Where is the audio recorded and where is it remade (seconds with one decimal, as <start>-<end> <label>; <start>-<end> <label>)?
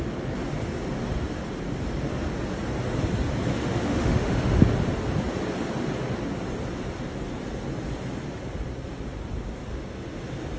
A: 0.0-3.5 recorded; 3.5-4.6 remade; 4.6-9.7 recorded; 9.7-10.2 remade; 10.2-10.6 recorded